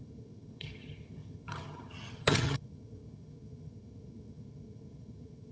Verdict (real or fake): fake